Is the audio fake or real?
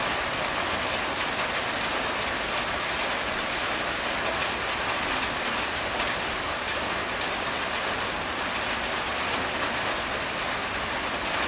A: real